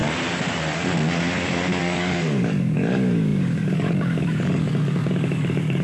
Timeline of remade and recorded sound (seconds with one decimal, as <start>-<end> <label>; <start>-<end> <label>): 0.0-1.8 recorded; 1.8-5.8 remade